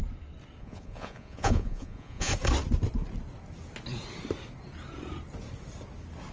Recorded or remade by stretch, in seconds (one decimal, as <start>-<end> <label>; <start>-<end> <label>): 0.0-0.6 recorded; 0.6-2.3 remade; 2.3-6.3 recorded